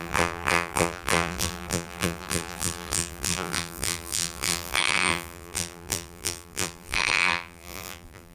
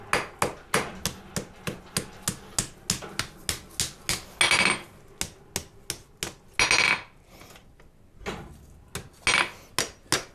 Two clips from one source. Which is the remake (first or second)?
first